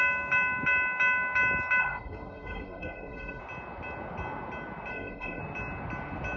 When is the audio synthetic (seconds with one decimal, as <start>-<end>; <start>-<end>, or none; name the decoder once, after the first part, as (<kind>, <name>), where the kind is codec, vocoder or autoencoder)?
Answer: 1.8-3.4 (codec, SNAC); 4.9-5.4